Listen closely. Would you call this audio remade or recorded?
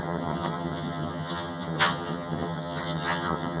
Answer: remade